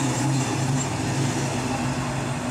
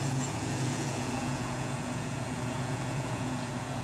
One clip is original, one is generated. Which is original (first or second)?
first